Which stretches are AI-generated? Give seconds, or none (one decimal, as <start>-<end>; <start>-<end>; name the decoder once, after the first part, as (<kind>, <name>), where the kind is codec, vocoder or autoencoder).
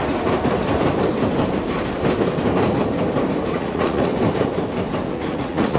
3.5-4.1 (vocoder, Vocos); 5.1-5.8